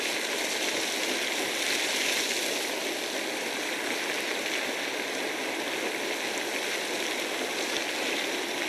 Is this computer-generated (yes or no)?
no